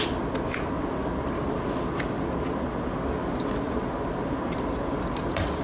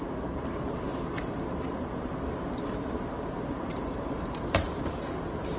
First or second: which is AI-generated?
second